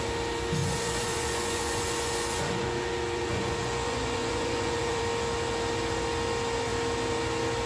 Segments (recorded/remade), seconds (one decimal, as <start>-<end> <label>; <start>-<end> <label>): 0.0-0.6 recorded; 0.6-5.0 remade; 5.0-7.7 recorded